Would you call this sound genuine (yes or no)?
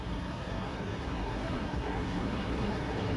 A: no